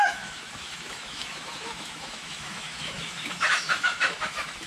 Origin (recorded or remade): remade